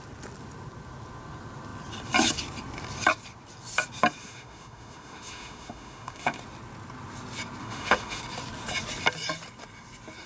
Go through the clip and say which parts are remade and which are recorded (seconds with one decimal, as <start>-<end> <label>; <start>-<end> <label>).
0.0-4.2 recorded; 4.2-6.4 remade; 6.4-7.6 recorded; 7.6-8.2 remade; 8.2-10.3 recorded